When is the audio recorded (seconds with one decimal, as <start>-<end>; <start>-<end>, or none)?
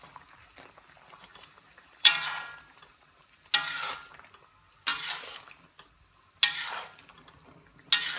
0.0-1.3; 3.2-8.2